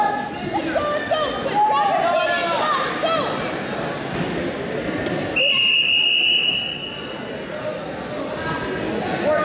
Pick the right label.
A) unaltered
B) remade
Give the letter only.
A